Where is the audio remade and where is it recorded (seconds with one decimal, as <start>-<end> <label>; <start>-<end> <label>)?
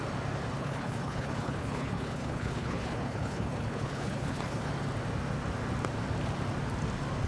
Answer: 0.0-0.6 recorded; 0.6-4.7 remade; 4.7-7.3 recorded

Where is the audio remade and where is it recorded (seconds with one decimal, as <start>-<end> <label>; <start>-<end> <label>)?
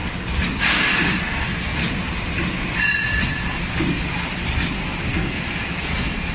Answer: 0.0-1.2 recorded; 1.2-1.8 remade; 1.8-5.1 recorded; 5.1-6.3 remade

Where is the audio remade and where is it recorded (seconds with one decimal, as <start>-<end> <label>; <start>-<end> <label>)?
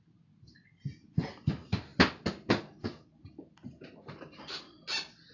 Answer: 0.0-5.3 recorded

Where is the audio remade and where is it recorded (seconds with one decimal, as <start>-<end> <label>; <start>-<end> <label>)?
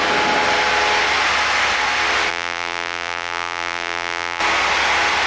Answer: 0.0-2.3 recorded; 2.3-4.4 remade; 4.4-5.3 recorded